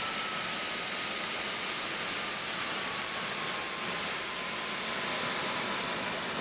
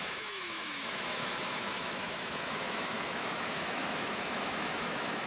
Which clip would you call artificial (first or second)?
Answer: second